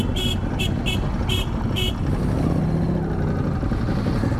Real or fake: real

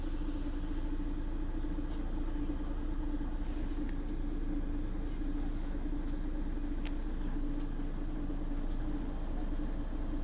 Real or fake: real